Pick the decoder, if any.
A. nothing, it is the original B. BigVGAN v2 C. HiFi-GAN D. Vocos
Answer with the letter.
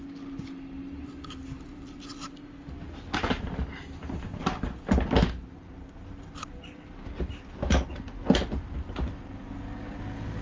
A